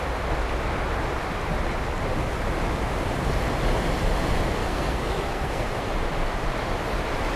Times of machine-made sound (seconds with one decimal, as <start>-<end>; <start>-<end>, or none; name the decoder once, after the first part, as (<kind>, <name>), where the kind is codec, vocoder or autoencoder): 4.6-5.9 (codec, SNAC)